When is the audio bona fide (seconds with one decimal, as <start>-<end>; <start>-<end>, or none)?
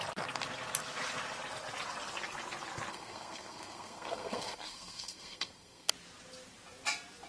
0.0-2.9; 5.9-7.3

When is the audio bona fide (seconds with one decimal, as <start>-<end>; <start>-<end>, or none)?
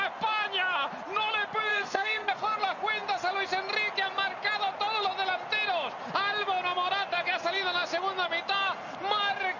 0.0-1.7; 2.3-9.6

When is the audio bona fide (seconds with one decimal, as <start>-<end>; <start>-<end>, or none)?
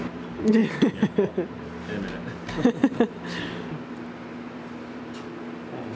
0.0-6.0